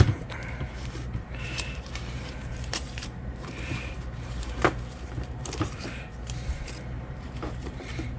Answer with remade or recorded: remade